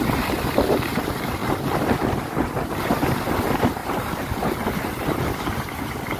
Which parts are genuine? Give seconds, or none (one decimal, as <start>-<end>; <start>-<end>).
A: 0.0-3.8; 4.9-6.2